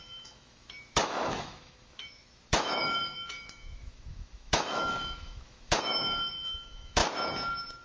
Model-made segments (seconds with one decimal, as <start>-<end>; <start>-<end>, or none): 0.0-7.0